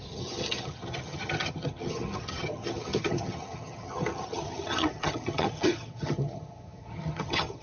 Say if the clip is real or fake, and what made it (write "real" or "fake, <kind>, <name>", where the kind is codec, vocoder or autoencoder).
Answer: fake, vocoder, HiFi-GAN